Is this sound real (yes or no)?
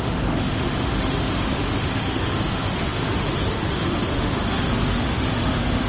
no